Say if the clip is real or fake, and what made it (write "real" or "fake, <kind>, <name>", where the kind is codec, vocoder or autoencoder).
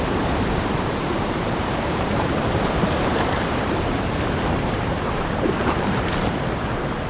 fake, vocoder, BigVGAN v2